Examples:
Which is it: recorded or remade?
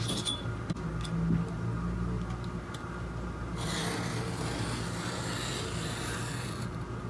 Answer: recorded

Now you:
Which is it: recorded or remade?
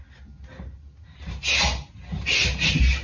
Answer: recorded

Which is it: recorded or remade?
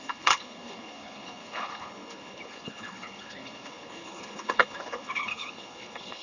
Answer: remade